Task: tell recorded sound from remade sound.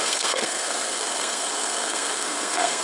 remade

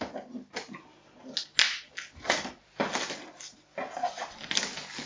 recorded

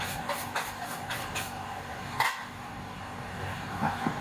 remade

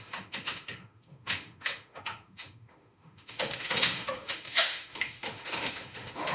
remade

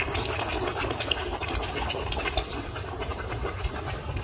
recorded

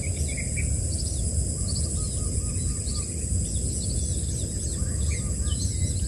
recorded